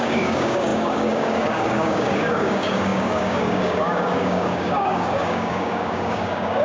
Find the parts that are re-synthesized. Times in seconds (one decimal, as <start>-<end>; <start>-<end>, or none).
0.0-6.6